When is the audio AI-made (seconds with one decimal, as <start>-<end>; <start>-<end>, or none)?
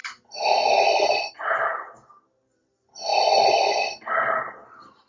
0.0-1.9; 3.1-5.1